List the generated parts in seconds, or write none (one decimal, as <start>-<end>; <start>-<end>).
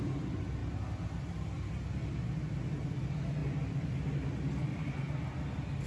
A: none